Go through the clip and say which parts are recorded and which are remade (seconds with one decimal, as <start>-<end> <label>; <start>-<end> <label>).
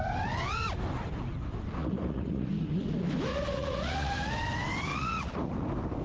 0.0-1.8 recorded; 1.8-2.5 remade; 2.5-3.3 recorded; 3.3-4.3 remade; 4.3-4.9 recorded; 4.9-5.5 remade; 5.5-6.0 recorded